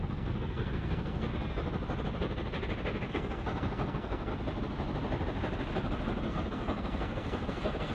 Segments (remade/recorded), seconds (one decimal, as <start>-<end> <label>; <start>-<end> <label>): 0.0-1.3 remade; 1.3-3.1 recorded; 3.1-4.3 remade; 4.3-6.3 recorded; 6.3-7.9 remade